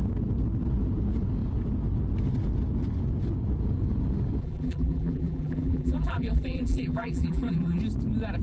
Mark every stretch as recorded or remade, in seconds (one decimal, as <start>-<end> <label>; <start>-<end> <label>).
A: 0.0-4.4 recorded; 4.4-7.8 remade; 7.8-8.4 recorded